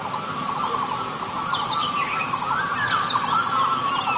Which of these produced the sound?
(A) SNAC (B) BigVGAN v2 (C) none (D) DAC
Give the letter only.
C